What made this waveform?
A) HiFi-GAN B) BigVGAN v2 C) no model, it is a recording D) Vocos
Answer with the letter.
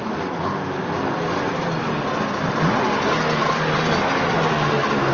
C